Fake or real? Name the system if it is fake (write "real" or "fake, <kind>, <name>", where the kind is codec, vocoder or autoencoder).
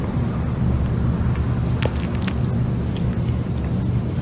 real